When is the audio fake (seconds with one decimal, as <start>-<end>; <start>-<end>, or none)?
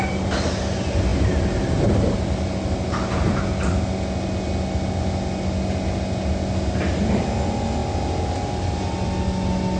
none